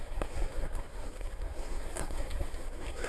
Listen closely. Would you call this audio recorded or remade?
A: remade